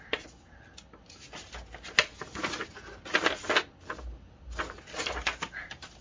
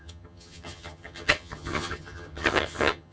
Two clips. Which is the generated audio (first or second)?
second